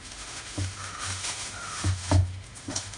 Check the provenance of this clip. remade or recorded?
remade